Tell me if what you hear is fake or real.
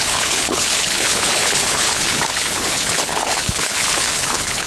fake